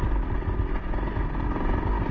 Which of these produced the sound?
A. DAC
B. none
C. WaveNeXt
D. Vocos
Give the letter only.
B